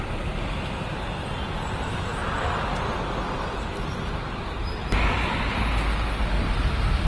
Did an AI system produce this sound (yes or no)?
no